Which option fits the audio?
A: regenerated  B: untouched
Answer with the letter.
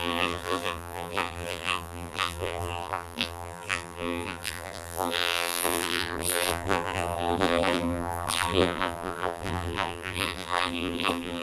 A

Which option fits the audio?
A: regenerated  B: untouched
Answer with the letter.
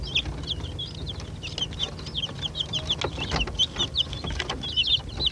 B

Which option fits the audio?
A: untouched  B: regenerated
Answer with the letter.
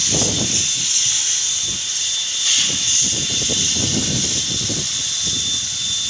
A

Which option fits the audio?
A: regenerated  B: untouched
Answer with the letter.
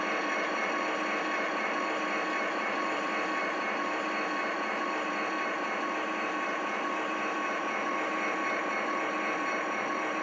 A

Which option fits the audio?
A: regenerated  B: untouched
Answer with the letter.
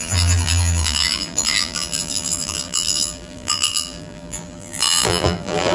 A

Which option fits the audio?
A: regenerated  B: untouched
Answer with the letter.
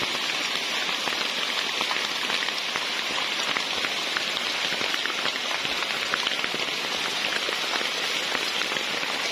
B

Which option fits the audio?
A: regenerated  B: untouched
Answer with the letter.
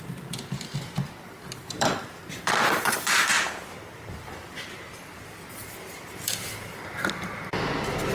A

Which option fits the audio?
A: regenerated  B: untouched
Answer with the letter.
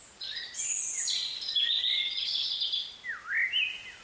B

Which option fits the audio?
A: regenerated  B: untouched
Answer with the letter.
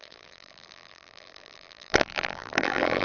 A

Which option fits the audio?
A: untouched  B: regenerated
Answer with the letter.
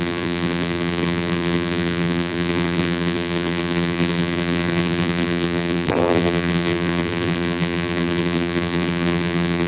B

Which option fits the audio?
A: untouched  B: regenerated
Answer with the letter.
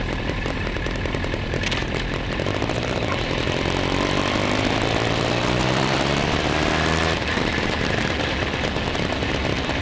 B